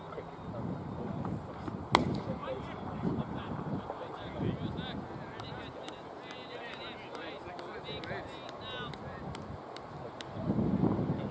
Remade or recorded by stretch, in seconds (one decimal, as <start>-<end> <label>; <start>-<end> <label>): 0.0-2.4 recorded; 2.4-4.4 remade; 4.4-11.3 recorded